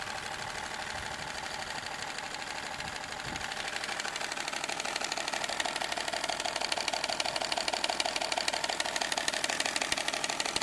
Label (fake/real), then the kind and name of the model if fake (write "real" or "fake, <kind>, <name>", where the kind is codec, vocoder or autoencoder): real